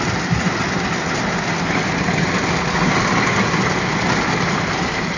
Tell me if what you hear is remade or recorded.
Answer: recorded